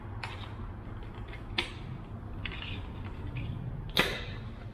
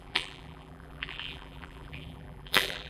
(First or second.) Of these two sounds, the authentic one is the first